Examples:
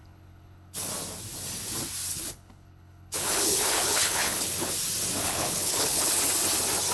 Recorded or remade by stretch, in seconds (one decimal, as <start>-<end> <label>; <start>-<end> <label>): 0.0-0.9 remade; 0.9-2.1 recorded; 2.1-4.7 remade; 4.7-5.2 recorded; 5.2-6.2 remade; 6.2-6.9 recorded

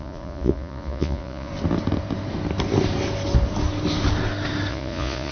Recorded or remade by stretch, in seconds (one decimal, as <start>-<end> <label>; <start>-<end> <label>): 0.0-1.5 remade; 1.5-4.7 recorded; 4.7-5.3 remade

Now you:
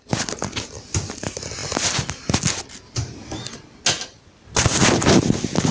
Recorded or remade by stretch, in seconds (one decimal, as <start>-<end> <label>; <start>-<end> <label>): 0.0-5.7 recorded

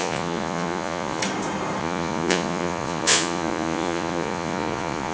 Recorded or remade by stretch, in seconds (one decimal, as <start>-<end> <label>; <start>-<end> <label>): 0.0-1.2 remade; 1.2-1.8 recorded; 1.8-5.1 remade